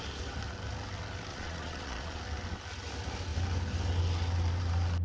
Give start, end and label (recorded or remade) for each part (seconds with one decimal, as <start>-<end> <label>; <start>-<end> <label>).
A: 0.0-1.3 recorded; 1.3-2.2 remade; 2.2-5.0 recorded